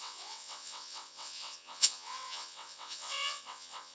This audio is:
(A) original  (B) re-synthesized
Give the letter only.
B